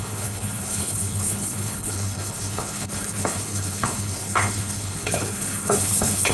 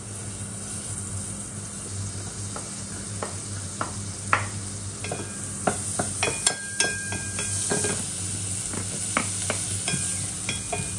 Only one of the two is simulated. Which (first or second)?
first